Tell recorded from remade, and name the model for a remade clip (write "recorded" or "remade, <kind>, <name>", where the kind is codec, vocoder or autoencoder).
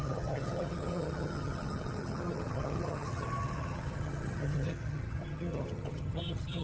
remade, vocoder, HiFi-GAN